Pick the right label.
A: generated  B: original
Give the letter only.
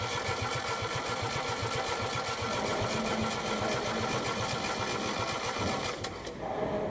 B